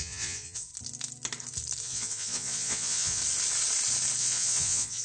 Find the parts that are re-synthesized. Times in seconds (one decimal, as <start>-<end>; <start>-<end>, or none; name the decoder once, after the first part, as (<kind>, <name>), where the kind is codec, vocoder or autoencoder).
0.0-0.7 (vocoder, Vocos); 1.8-3.2; 4.2-5.0